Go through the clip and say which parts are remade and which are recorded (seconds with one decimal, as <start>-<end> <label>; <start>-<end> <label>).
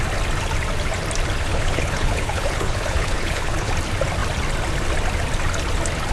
0.0-1.5 recorded; 1.5-3.7 remade; 3.7-6.1 recorded